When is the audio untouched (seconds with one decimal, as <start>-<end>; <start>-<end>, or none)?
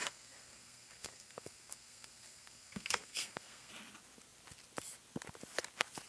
3.7-6.1